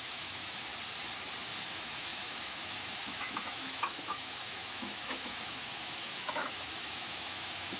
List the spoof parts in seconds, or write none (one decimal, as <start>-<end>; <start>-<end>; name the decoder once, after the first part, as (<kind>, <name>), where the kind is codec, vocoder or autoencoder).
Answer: 0.0-0.7 (autoencoder, DAC-VAE); 1.6-7.8